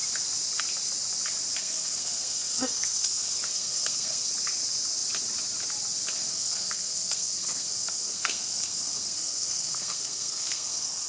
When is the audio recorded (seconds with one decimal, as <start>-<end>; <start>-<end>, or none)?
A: 0.0-1.6; 4.3-6.3